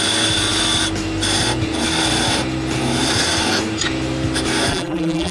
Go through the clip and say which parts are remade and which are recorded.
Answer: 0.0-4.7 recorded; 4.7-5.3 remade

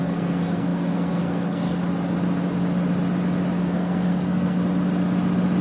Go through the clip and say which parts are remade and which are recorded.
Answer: 0.0-1.8 remade; 1.8-3.6 recorded; 3.6-4.6 remade; 4.6-5.6 recorded

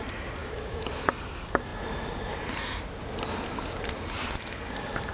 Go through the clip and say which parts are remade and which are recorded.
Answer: 0.0-0.4 recorded; 0.4-1.1 remade; 1.1-5.1 recorded

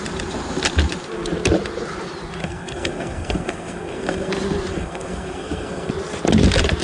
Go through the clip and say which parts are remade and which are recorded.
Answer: 0.0-2.4 recorded; 2.4-4.3 remade; 4.3-4.7 recorded; 4.7-5.9 remade; 5.9-6.8 recorded

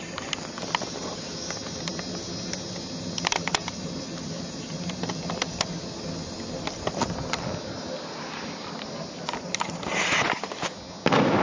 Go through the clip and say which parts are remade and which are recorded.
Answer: 0.0-11.4 recorded